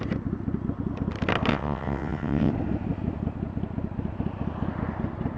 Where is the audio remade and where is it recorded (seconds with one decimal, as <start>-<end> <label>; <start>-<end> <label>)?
0.0-1.5 recorded; 1.5-2.5 remade; 2.5-5.4 recorded